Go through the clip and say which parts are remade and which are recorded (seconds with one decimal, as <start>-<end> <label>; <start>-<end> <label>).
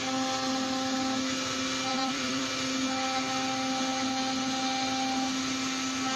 0.0-1.9 recorded; 1.9-2.5 remade; 2.5-6.2 recorded